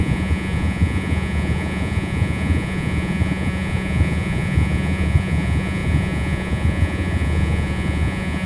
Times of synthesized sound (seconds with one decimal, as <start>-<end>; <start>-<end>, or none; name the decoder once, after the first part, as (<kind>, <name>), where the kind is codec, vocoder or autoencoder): 0.0-8.5 (vocoder, Vocos)